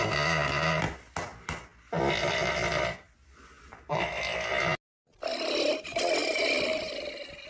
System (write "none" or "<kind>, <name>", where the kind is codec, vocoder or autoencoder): none